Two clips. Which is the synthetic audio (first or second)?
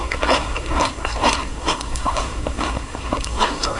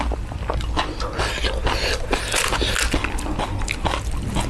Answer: first